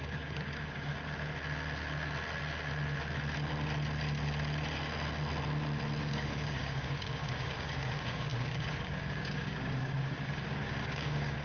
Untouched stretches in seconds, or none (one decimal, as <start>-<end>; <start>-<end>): 0.9-6.0